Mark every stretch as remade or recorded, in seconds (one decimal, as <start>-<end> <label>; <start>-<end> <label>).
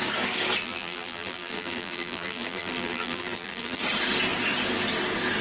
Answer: 0.0-0.6 recorded; 0.6-3.8 remade; 3.8-5.4 recorded